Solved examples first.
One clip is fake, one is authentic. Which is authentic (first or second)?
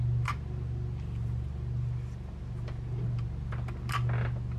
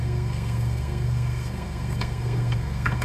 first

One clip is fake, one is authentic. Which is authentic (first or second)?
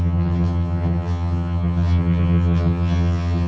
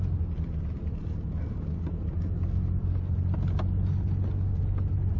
second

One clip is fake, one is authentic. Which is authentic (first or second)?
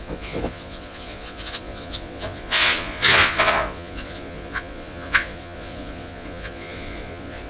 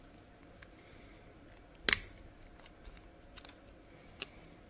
second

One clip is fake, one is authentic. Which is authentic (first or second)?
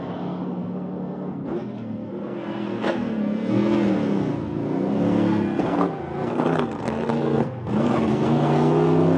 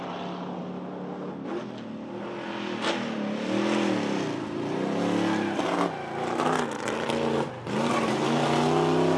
second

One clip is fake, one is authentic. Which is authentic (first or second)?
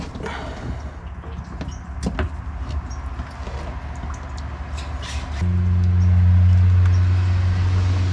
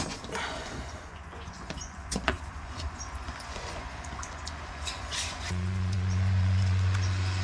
first